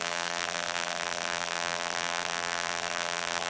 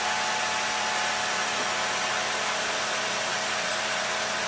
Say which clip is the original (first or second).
second